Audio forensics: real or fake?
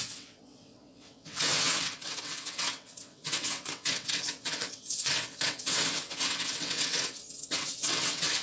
fake